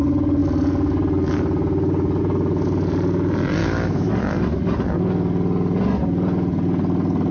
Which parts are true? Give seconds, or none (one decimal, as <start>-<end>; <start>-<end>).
0.0-3.6; 4.1-7.3